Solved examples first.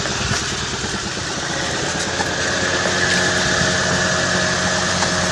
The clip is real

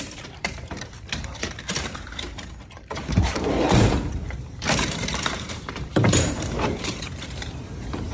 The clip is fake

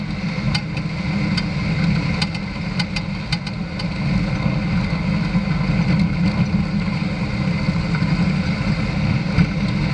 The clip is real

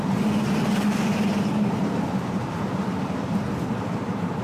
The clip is fake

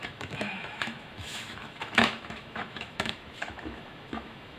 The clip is fake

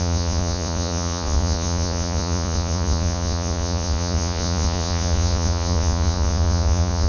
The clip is fake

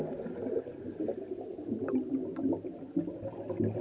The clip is real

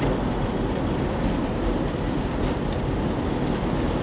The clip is real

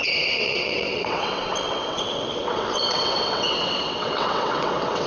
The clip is fake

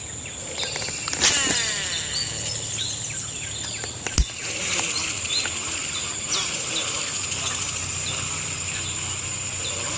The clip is real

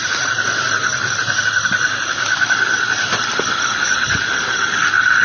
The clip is real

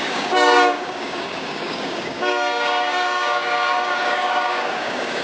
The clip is fake